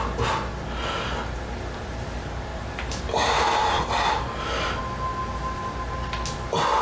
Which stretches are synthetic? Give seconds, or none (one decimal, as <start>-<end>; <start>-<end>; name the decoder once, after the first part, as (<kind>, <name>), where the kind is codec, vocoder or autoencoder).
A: 2.5-3.6 (vocoder, BigVGAN v2)